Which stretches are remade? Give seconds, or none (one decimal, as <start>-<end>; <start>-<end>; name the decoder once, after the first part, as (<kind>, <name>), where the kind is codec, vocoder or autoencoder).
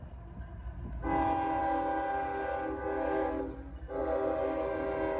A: none